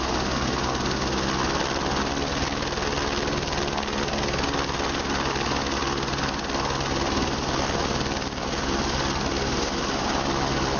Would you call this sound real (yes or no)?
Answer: yes